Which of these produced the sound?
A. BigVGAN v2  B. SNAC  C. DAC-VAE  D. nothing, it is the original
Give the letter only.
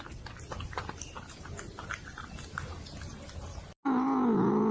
D